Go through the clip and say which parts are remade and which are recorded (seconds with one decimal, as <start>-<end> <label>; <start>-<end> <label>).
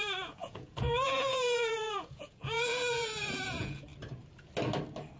0.0-3.9 remade; 3.9-5.2 recorded